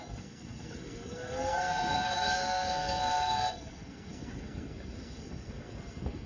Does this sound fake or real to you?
fake